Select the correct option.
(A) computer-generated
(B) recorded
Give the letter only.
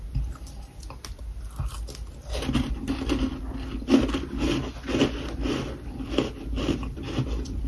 B